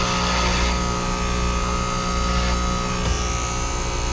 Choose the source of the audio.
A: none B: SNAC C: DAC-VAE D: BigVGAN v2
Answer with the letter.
A